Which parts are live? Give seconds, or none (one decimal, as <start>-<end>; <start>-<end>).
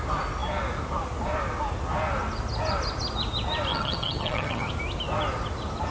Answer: 0.0-3.7; 4.7-5.9